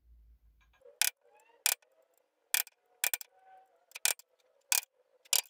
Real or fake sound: real